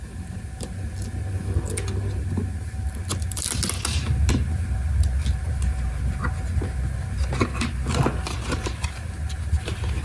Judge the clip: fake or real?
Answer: real